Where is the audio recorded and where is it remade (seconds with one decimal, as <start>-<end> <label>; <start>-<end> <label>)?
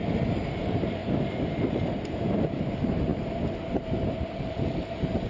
0.0-1.0 remade; 1.0-2.7 recorded; 2.7-3.1 remade; 3.1-4.1 recorded; 4.1-5.3 remade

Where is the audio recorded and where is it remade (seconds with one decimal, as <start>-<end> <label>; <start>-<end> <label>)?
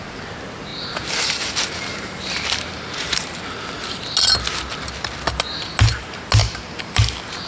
0.0-0.7 recorded; 0.7-3.4 remade; 3.4-6.4 recorded; 6.4-7.0 remade; 7.0-7.5 recorded